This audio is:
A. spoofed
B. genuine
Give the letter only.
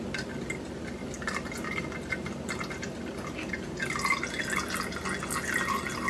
B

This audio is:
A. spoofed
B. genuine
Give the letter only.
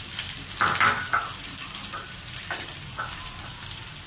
B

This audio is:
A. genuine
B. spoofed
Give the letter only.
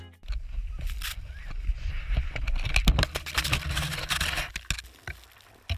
A